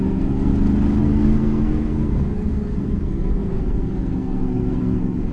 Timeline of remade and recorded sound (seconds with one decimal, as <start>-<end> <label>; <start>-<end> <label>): 0.0-0.5 remade; 0.5-1.0 recorded; 1.0-5.3 remade